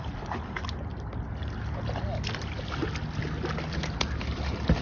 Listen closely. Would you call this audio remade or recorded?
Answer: recorded